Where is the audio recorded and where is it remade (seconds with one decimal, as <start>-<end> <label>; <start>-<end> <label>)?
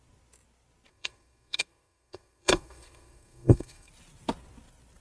0.0-0.9 recorded; 0.9-3.9 remade; 3.9-5.0 recorded